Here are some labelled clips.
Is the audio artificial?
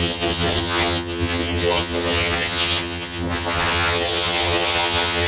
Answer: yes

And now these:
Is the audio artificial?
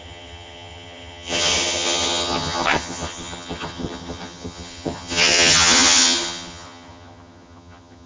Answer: yes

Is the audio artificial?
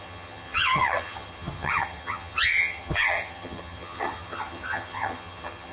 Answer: yes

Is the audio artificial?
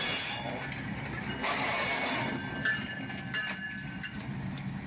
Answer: no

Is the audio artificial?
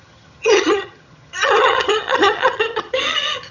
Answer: yes